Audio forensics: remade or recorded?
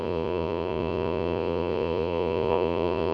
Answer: remade